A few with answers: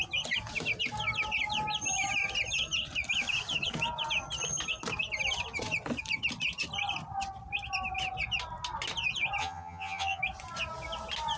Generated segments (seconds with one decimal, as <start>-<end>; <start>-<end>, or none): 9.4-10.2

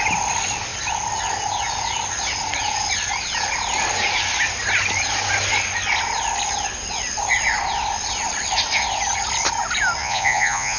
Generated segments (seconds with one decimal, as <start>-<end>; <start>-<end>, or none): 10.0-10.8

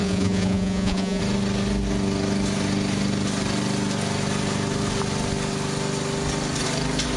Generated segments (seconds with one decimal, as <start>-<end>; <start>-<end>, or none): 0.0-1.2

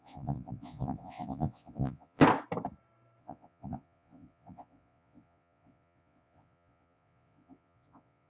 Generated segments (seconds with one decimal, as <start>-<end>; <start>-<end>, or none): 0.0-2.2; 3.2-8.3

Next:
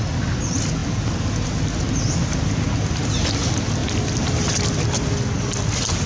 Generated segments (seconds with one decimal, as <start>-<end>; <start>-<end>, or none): none